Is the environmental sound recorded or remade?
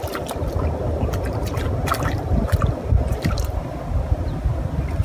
recorded